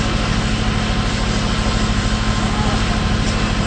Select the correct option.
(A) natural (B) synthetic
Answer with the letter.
A